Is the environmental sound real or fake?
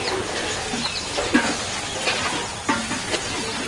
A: real